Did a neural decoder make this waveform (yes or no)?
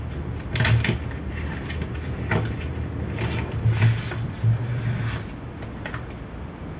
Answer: no